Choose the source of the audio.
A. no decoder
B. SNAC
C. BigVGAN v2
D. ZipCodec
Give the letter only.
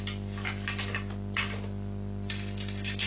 A